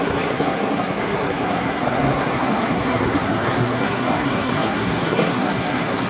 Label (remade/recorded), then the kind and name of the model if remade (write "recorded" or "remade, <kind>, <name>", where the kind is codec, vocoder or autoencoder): remade, codec, SNAC